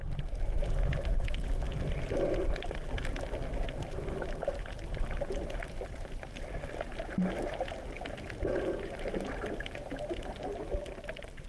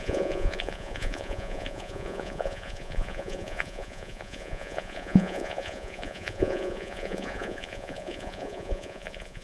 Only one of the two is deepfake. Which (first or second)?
second